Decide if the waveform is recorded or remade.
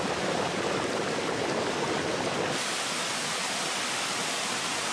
recorded